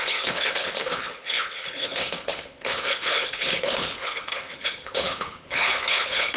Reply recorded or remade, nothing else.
remade